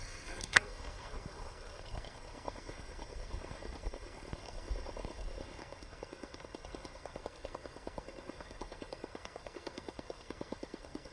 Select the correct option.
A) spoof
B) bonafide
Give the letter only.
A